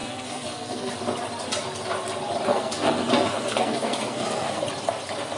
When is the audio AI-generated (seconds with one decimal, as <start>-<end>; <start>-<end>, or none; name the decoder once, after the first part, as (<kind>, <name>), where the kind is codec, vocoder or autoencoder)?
0.0-0.9 (codec, SNAC); 2.5-4.6